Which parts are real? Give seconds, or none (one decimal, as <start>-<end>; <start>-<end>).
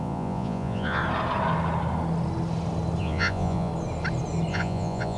1.0-3.0; 3.7-4.5